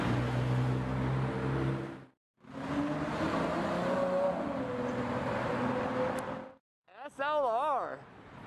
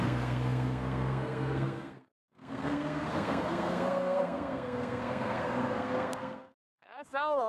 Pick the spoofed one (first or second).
second